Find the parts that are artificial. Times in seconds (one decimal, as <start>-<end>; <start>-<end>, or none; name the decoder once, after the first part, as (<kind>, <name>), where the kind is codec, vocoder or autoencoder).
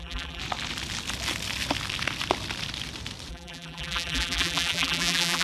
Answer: 0.0-0.4 (vocoder, BigVGAN v2); 3.3-5.4